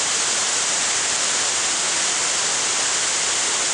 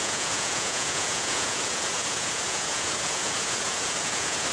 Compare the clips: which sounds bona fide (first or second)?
first